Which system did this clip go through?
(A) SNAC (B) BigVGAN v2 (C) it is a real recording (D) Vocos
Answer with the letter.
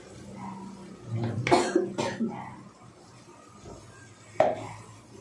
C